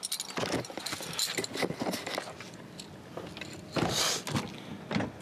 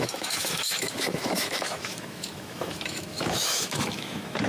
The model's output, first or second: second